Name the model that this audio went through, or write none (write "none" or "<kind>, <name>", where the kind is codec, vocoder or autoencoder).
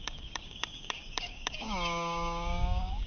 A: codec, DAC